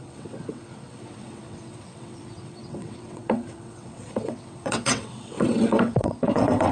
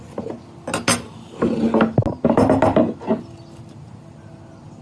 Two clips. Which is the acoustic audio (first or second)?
second